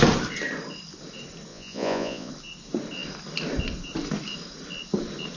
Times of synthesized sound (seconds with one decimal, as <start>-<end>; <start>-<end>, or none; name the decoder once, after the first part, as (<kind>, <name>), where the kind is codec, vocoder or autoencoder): 1.5-2.3 (vocoder, Vocos)